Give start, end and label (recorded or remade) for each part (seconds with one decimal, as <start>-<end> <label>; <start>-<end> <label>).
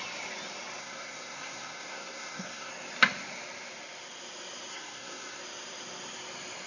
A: 0.0-0.8 recorded; 0.8-2.7 remade; 2.7-4.7 recorded; 4.7-5.4 remade; 5.4-6.7 recorded